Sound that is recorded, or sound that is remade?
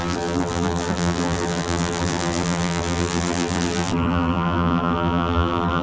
remade